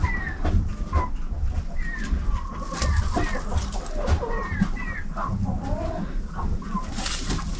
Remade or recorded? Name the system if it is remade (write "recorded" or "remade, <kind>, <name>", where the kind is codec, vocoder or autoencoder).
recorded